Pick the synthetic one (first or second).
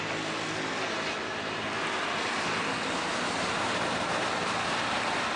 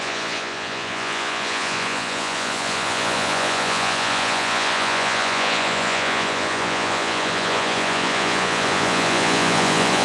second